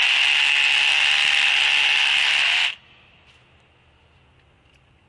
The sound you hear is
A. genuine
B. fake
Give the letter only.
A